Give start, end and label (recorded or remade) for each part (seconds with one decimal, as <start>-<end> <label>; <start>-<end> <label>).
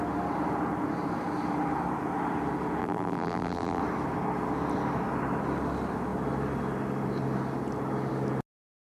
0.0-2.8 recorded; 2.8-3.8 remade; 3.8-8.8 recorded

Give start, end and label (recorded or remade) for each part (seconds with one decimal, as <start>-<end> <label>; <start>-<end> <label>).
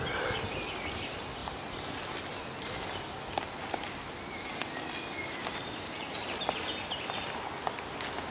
0.0-8.3 recorded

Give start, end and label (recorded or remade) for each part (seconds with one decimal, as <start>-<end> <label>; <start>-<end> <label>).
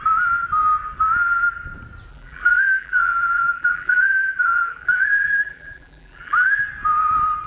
0.0-2.1 recorded; 2.1-6.6 remade; 6.6-7.5 recorded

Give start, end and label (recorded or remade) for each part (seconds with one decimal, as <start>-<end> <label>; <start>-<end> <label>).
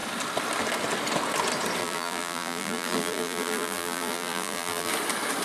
0.0-1.8 recorded; 1.8-4.9 remade; 4.9-5.4 recorded